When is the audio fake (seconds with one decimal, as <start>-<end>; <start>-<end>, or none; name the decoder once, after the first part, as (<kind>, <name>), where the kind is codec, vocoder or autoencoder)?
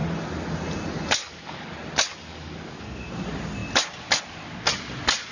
1.2-1.7 (codec, DAC); 2.3-3.1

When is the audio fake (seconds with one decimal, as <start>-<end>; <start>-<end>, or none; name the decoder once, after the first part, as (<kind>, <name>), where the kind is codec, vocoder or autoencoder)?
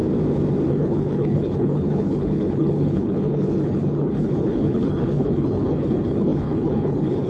0.7-7.3 (codec, HILCodec)